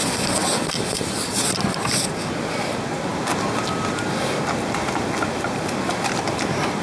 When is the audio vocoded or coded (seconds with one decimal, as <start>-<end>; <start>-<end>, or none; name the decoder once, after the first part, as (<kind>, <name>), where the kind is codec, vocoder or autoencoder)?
none